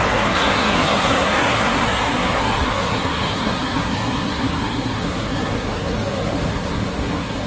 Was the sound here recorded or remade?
remade